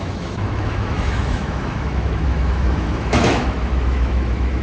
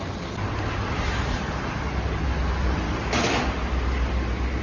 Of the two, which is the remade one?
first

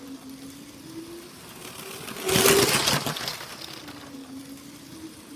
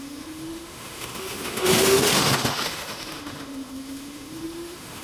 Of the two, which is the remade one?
second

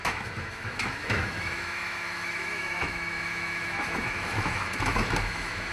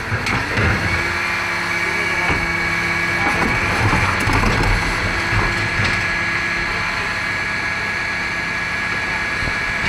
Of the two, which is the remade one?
first